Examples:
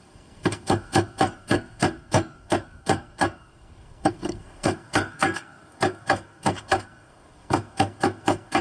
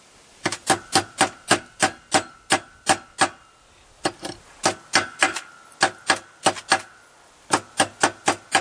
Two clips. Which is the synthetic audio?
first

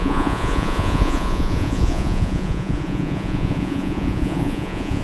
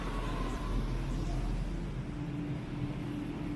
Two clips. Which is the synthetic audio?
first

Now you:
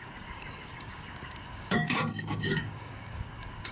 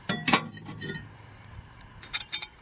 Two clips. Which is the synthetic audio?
first